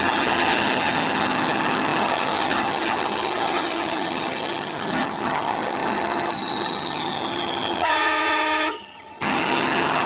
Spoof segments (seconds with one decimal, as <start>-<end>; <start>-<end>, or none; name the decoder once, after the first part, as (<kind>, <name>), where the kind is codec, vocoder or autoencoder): 0.0-10.1 (vocoder, HiFi-GAN)